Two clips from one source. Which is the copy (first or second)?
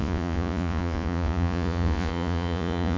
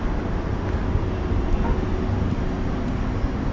first